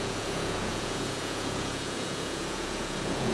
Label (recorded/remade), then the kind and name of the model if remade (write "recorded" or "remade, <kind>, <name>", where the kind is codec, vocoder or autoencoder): remade, vocoder, Vocos